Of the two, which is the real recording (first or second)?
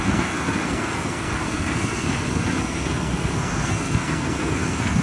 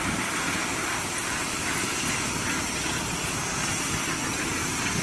second